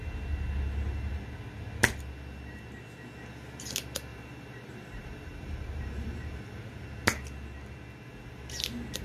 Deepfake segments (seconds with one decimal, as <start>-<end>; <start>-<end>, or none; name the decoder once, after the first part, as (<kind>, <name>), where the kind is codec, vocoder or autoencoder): 4.1-6.7 (vocoder, BigVGAN v2)